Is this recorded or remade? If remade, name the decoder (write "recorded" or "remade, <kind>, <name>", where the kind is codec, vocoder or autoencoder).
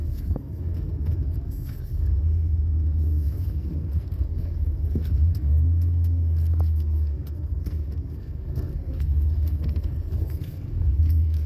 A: remade, codec, SNAC